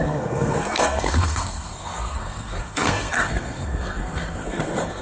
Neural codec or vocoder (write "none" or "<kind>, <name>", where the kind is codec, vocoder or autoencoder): codec, SNAC